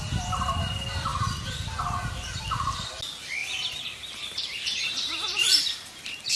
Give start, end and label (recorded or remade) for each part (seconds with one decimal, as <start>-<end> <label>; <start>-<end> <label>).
0.0-3.4 recorded; 3.4-5.6 remade; 5.6-6.4 recorded